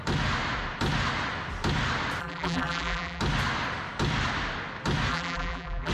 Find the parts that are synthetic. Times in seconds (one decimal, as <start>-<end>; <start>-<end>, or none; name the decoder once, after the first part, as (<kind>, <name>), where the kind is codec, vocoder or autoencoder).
2.2-3.2 (vocoder, BigVGAN v2); 5.1-5.9

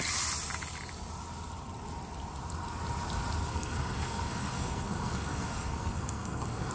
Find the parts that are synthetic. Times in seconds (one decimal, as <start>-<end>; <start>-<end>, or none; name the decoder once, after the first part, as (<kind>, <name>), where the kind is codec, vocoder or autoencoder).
3.5-6.7 (codec, SNAC)

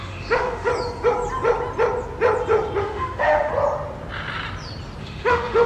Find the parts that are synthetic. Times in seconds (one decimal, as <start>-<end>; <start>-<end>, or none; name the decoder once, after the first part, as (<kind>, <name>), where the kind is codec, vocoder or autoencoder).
0.0-0.7 (autoencoder, DAC-VAE); 2.8-3.5; 5.0-5.7

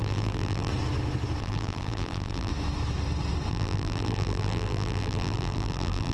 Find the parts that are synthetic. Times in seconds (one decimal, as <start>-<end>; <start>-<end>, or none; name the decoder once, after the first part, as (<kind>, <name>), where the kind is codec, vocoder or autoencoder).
0.0-0.7 (vocoder, BigVGAN v2); 1.4-2.5; 3.5-6.1

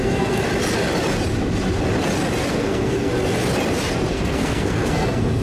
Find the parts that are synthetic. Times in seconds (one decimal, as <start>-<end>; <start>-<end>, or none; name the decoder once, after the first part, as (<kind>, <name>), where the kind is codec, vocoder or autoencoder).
0.0-0.5 (codec, SNAC); 2.5-3.1; 4.1-5.4